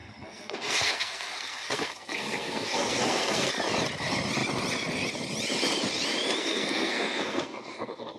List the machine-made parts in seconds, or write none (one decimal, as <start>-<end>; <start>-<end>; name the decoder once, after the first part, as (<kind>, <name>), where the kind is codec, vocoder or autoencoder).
0.0-3.5 (codec, SNAC); 6.4-8.2